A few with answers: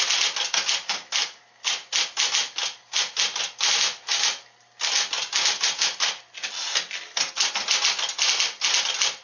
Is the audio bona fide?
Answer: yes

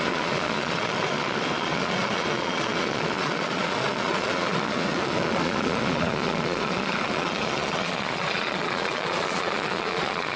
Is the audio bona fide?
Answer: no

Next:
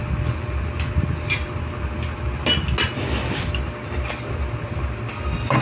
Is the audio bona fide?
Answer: yes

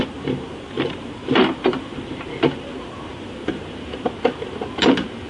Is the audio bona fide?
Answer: no